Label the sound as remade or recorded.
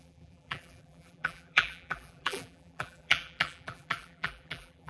remade